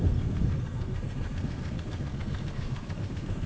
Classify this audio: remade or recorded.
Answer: remade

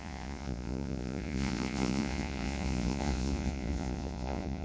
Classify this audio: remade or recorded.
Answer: remade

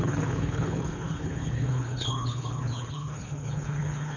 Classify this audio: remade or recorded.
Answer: remade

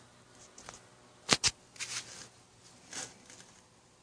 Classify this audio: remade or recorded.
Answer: recorded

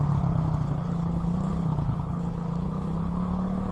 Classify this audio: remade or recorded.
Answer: remade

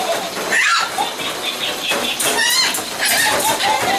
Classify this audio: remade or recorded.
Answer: recorded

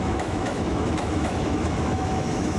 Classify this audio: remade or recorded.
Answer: remade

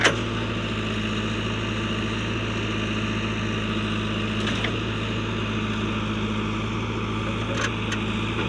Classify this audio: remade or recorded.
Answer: recorded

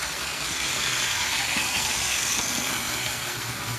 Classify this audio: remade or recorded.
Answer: remade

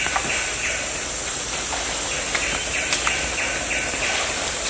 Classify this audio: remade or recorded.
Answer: recorded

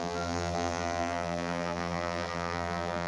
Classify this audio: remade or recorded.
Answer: remade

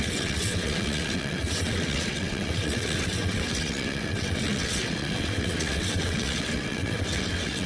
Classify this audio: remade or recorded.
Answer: remade